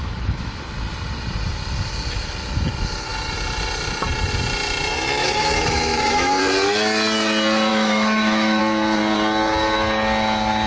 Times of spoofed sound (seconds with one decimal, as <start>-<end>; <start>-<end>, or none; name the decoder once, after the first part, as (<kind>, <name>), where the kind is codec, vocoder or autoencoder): 0.0-0.6 (autoencoder, DAC-VAE); 5.2-6.4; 7.7-8.6